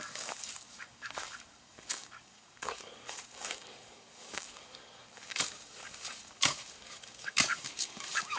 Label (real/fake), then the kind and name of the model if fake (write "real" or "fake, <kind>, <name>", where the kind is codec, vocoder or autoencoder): fake, codec, DAC